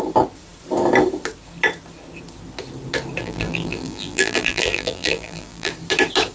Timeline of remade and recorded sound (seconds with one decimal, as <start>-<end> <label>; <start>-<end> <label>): 0.0-3.2 recorded; 3.2-5.7 remade; 5.7-6.3 recorded